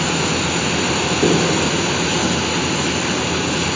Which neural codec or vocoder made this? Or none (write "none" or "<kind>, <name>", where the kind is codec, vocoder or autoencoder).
none